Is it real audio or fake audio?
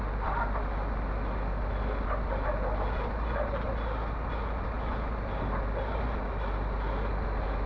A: real